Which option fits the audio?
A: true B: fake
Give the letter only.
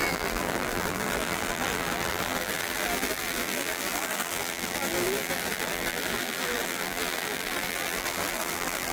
B